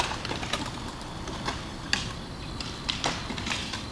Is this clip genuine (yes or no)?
yes